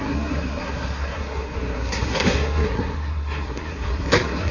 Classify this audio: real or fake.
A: fake